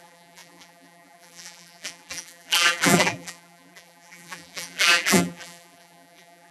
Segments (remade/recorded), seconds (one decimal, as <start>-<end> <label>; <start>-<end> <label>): 0.0-6.5 remade

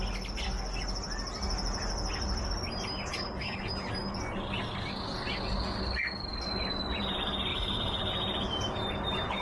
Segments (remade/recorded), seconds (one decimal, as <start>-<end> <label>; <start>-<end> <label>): 0.0-3.1 recorded; 3.1-3.7 remade; 3.7-7.5 recorded; 7.5-8.1 remade; 8.1-9.4 recorded